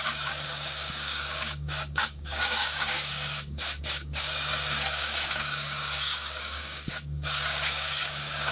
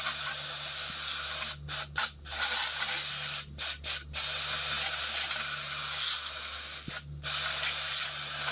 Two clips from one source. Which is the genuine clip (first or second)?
second